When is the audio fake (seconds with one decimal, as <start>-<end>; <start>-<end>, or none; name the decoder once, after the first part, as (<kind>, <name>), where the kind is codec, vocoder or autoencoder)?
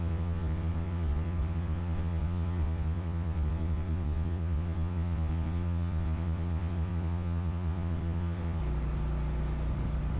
0.0-8.6 (vocoder, Vocos)